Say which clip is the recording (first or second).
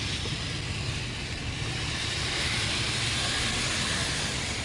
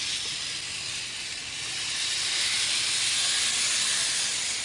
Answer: second